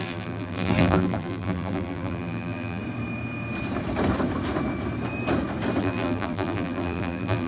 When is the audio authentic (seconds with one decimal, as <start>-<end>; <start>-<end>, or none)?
2.8-5.8